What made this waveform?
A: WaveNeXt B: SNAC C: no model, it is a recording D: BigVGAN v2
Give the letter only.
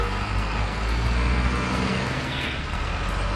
B